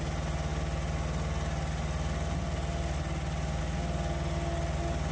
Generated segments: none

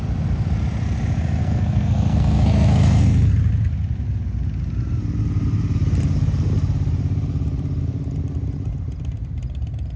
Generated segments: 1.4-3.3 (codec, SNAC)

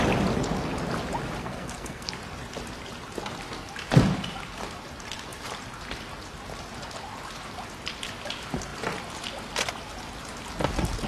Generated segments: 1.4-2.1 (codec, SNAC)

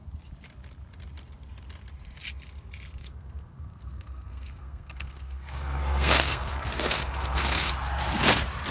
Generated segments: 3.0-7.7 (codec, SNAC)